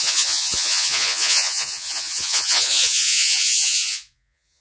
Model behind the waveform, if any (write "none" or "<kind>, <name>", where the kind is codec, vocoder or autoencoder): vocoder, Vocos